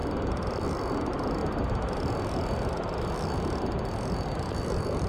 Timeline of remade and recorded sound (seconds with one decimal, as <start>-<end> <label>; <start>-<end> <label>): 0.0-5.1 recorded